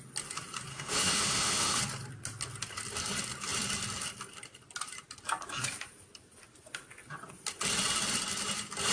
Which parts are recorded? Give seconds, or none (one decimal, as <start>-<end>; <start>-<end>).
0.0-0.7; 1.8-8.9